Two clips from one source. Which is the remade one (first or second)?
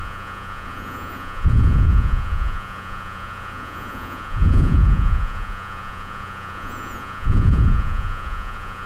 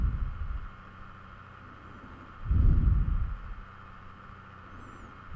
first